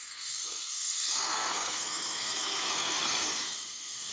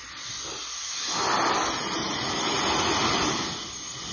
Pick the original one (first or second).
second